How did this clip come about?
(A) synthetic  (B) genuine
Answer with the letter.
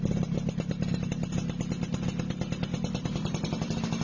B